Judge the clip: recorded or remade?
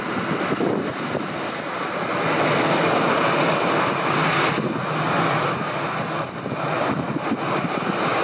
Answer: recorded